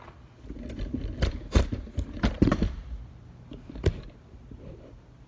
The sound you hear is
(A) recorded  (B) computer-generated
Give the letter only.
A